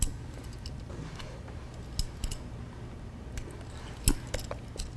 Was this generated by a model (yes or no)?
no